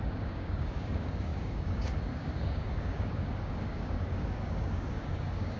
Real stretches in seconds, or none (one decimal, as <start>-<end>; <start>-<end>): none